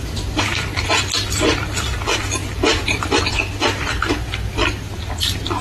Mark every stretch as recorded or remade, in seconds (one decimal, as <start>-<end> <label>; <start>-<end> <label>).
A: 0.0-2.4 recorded; 2.4-3.2 remade; 3.2-5.6 recorded

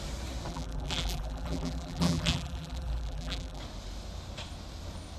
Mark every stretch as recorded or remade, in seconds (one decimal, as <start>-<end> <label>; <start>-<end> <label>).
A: 0.0-0.5 recorded; 0.5-3.6 remade; 3.6-5.2 recorded

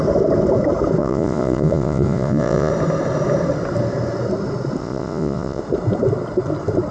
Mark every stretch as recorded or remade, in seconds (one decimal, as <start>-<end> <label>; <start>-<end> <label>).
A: 0.0-1.0 recorded; 1.0-2.7 remade; 2.7-4.8 recorded; 4.8-5.6 remade; 5.6-6.9 recorded

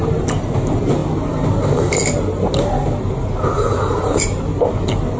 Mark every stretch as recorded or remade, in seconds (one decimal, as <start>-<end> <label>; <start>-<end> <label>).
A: 0.0-5.2 recorded

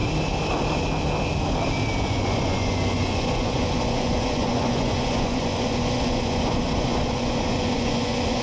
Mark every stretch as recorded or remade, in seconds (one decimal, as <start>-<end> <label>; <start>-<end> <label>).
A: 0.0-2.0 recorded; 2.0-8.4 remade

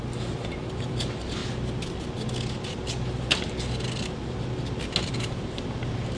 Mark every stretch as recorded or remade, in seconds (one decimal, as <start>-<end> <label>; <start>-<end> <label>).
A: 0.0-1.4 remade; 1.4-5.1 recorded; 5.1-6.2 remade

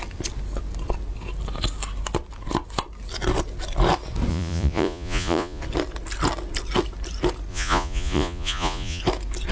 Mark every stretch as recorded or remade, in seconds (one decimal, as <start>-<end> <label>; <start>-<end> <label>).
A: 0.0-4.3 recorded; 4.3-5.6 remade; 5.6-7.5 recorded; 7.5-9.0 remade; 9.0-9.5 recorded

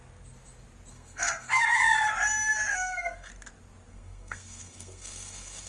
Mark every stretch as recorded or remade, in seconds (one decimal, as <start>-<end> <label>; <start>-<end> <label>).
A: 0.0-0.9 recorded; 0.9-1.8 remade; 1.8-2.7 recorded; 2.7-3.3 remade; 3.3-3.9 recorded; 3.9-5.7 remade